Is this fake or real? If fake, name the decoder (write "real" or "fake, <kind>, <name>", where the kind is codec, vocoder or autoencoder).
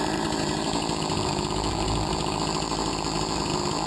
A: fake, vocoder, BigVGAN v2